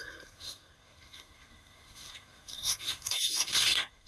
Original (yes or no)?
no